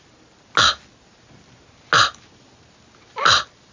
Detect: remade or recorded recorded